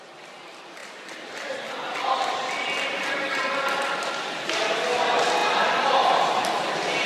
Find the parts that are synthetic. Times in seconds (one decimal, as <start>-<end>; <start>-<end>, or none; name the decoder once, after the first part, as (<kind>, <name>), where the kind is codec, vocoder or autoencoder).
0.8-3.3 (vocoder, BigVGAN v2)